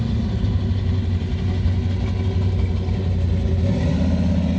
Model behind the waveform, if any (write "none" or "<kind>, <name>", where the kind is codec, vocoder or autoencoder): none